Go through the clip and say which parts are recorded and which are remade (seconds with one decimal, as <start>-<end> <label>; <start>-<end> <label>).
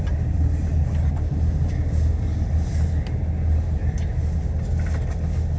0.0-5.6 recorded